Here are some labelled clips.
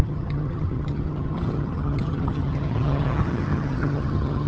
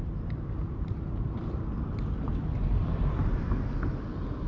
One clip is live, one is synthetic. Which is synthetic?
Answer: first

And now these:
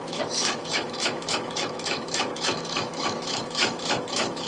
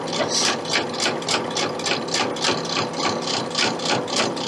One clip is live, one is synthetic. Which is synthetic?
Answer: first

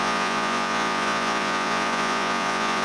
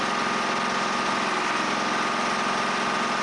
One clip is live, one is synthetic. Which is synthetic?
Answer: first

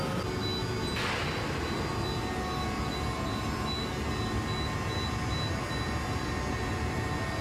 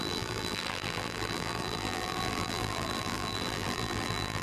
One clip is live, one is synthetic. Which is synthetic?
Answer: second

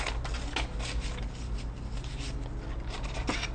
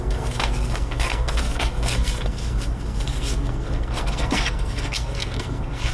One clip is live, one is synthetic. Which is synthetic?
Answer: second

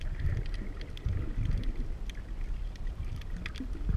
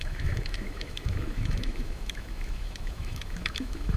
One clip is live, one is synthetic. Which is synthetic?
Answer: second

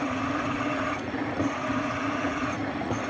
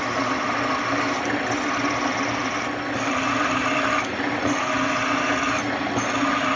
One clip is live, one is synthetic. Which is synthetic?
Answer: first